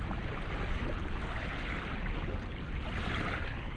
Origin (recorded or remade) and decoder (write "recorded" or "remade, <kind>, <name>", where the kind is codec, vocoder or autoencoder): recorded